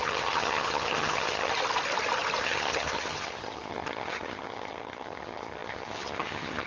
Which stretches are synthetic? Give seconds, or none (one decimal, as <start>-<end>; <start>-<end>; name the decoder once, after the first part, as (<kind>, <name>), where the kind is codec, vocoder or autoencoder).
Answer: 0.0-1.5 (vocoder, HiFi-GAN); 2.4-6.7